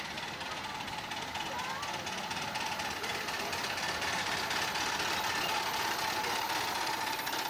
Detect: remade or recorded recorded